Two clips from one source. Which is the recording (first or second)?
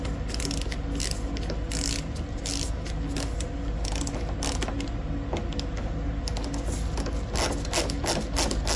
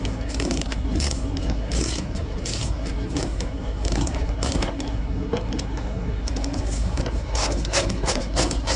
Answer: first